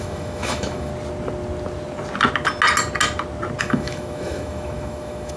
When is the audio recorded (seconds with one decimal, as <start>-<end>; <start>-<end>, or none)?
0.9-3.6